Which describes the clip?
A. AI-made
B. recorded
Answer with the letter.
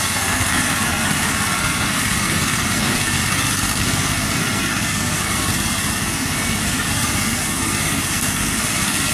A